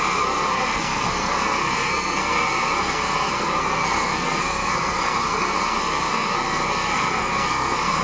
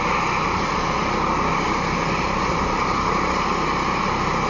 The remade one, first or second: first